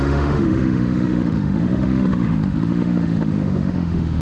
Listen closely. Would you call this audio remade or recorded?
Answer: remade